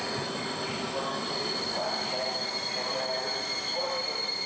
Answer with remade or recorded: recorded